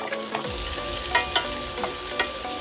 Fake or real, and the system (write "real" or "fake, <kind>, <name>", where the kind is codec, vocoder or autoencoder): real